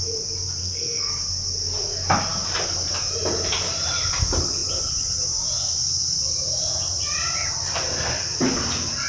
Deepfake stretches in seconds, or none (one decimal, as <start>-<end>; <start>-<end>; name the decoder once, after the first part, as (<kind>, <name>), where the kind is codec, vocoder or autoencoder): 0.6-1.1 (codec, SNAC)